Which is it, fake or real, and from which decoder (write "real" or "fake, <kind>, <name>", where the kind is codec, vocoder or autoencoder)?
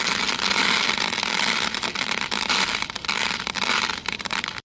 fake, vocoder, BigVGAN v2